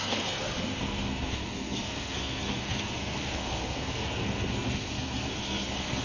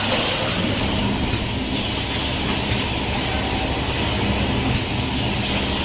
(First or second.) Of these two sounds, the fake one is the first